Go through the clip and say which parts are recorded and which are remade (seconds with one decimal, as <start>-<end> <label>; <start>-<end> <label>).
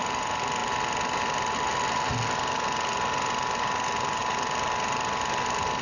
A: 0.0-5.8 recorded